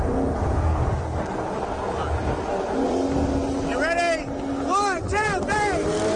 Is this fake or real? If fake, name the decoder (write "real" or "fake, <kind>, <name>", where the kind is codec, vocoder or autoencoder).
real